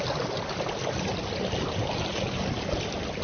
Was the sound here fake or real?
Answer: real